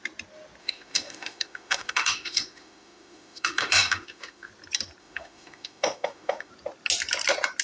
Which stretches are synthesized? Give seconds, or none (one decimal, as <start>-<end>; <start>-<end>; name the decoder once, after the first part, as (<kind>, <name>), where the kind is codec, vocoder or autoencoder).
0.6-4.5 (autoencoder, DAC-VAE); 5.0-6.5